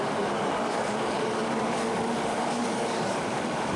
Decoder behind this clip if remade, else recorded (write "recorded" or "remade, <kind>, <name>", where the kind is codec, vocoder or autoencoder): remade, codec, DAC